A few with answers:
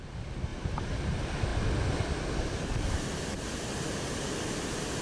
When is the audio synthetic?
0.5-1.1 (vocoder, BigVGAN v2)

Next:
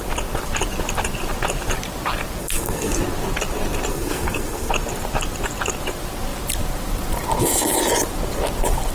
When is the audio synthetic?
2.4-3.0 (codec, SNAC); 3.9-4.7

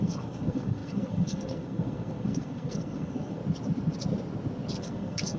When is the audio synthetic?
0.0-3.4 (codec, SNAC); 4.8-5.4

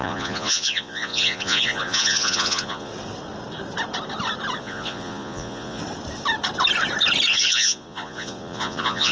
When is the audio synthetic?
0.0-2.9 (vocoder, Vocos); 4.6-5.8; 7.3-9.1